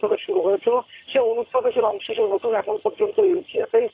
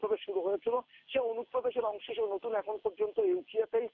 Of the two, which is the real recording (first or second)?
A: second